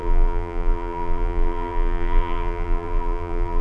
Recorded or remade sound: remade